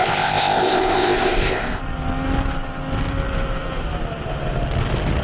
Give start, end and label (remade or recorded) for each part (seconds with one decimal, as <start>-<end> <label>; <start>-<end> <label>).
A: 0.0-1.8 remade; 1.8-5.2 recorded